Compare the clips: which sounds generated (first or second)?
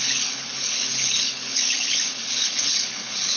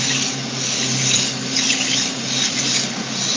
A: first